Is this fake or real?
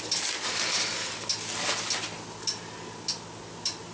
real